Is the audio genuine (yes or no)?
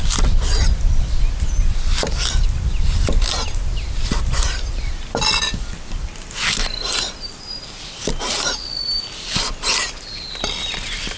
yes